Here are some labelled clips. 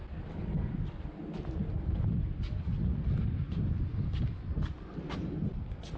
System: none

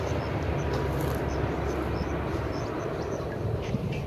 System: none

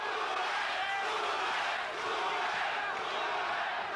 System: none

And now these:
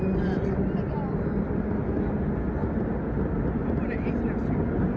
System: none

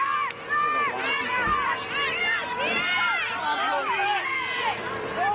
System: vocoder, BigVGAN v2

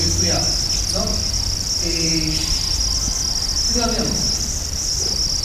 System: none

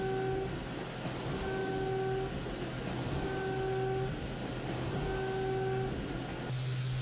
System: none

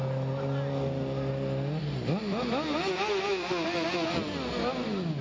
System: none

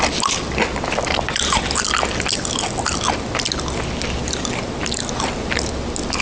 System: none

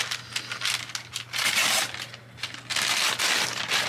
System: none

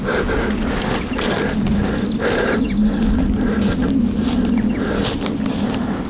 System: none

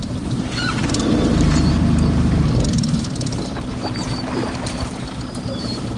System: vocoder, BigVGAN v2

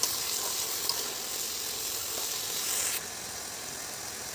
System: none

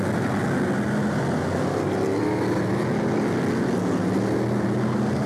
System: none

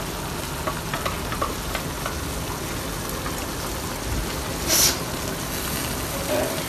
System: none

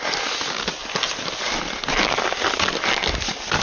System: none